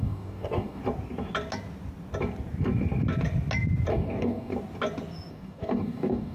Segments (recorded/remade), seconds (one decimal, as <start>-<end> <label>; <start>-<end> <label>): 0.0-0.8 remade; 0.8-3.9 recorded; 3.9-4.5 remade; 4.5-5.3 recorded; 5.3-6.3 remade